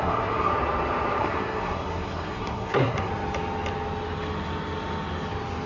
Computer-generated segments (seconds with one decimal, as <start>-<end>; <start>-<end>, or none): 0.0-0.5; 1.2-3.1